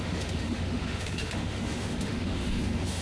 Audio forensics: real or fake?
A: fake